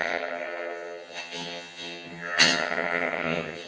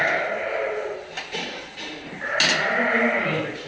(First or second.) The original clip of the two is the second